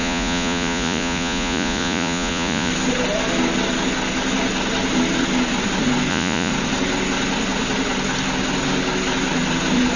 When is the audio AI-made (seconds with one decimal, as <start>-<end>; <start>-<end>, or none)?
0.0-2.7; 6.1-6.5